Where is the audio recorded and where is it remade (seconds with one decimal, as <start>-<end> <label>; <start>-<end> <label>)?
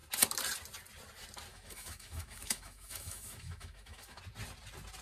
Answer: 0.0-1.5 recorded; 1.5-4.2 remade; 4.2-5.0 recorded